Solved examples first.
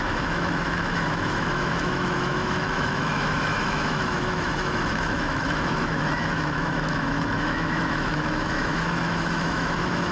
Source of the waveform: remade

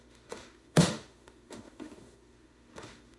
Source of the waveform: remade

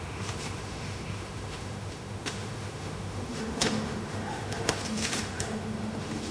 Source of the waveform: remade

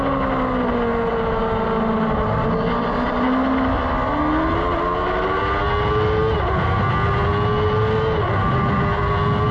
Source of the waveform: recorded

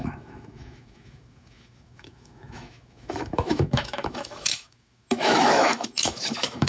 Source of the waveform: remade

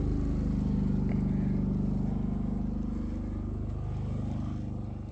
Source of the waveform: recorded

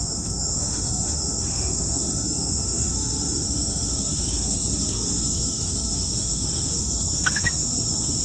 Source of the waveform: remade